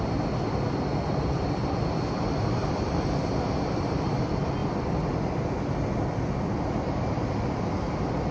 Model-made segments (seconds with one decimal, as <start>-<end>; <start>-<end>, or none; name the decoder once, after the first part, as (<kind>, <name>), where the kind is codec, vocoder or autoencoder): 2.6-3.3 (vocoder, BigVGAN v2)